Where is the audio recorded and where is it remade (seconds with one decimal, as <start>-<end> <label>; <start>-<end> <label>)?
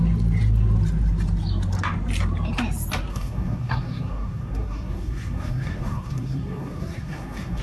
0.0-3.1 recorded; 3.1-7.6 remade